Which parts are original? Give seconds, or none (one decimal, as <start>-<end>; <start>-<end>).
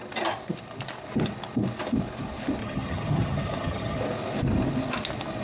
0.0-2.6; 4.0-5.4